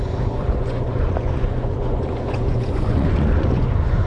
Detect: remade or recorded remade